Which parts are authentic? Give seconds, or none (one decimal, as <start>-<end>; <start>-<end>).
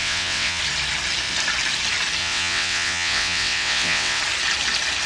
0.6-2.2; 4.2-5.1